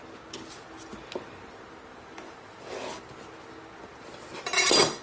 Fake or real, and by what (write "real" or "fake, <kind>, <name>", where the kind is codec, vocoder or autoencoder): real